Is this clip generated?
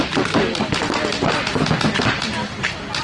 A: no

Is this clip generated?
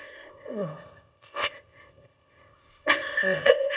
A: yes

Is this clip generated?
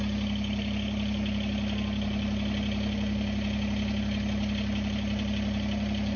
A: no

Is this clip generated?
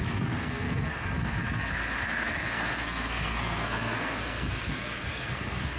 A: yes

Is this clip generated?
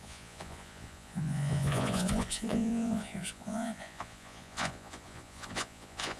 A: yes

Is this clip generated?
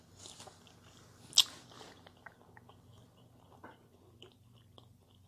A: no